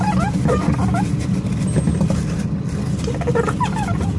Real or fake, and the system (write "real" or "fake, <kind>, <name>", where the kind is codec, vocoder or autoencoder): real